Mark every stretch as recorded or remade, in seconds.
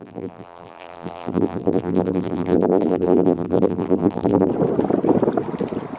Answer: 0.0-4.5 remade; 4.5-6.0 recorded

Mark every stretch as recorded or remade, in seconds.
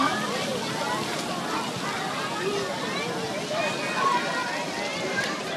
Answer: 0.0-4.9 recorded; 4.9-5.6 remade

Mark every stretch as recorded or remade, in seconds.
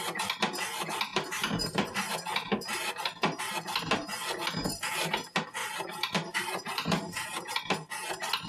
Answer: 0.0-1.1 recorded; 1.1-3.4 remade; 3.4-5.6 recorded; 5.6-7.5 remade; 7.5-8.5 recorded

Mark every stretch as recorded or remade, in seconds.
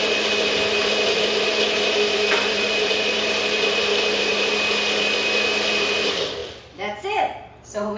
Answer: 0.0-0.8 recorded; 0.8-4.5 remade; 4.5-8.0 recorded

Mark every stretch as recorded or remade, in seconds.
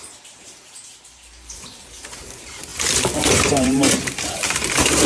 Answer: 0.0-2.7 remade; 2.7-3.3 recorded; 3.3-5.1 remade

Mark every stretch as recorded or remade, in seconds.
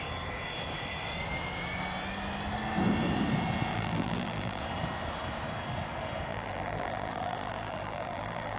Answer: 0.0-3.7 recorded; 3.7-4.6 remade; 4.6-6.3 recorded; 6.3-8.6 remade